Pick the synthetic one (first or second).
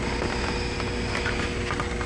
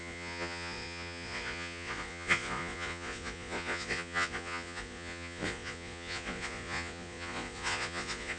second